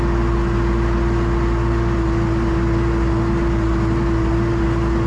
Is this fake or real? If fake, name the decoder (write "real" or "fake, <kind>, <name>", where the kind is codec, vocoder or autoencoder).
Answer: real